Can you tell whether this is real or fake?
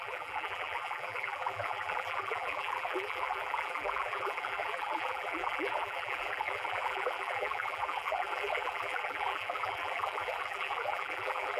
fake